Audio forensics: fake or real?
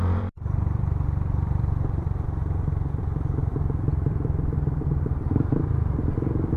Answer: fake